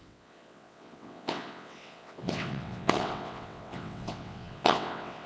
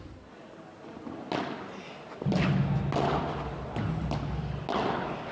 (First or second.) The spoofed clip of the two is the first